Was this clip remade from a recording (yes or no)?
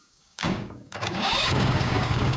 yes